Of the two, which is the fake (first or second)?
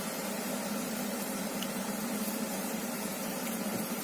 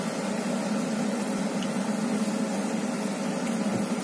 first